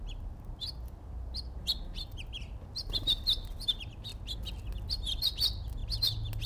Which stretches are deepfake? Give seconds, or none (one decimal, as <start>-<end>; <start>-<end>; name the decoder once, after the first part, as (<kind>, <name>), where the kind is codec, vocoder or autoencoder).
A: 0.0-4.1 (vocoder, BigVGAN v2); 5.2-5.8